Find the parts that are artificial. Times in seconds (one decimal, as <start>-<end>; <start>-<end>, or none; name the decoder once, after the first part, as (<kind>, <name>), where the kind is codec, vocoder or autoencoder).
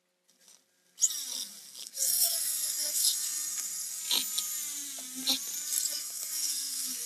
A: 1.8-4.0 (codec, SNAC); 6.0-7.1